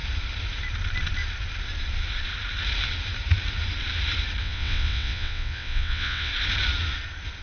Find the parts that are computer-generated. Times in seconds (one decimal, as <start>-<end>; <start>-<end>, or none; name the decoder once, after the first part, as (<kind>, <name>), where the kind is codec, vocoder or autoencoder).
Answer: 4.4-6.3 (vocoder, WaveNeXt)